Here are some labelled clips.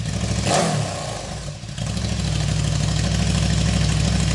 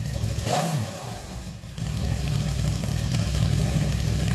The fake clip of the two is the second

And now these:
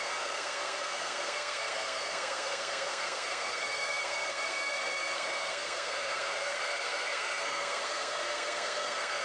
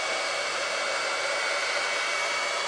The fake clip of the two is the first